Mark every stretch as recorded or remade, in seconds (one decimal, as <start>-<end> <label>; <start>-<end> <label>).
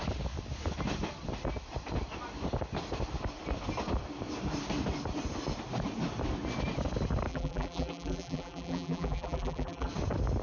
0.0-7.3 recorded; 7.3-9.9 remade; 9.9-10.4 recorded